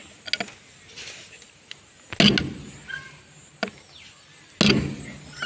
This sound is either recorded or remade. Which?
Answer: recorded